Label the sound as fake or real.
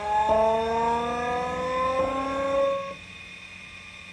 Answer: real